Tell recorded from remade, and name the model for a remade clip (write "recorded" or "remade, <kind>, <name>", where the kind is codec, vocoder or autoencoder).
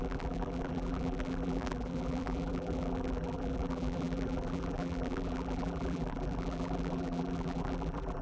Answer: remade, vocoder, BigVGAN v2